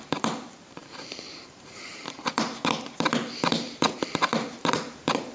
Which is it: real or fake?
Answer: fake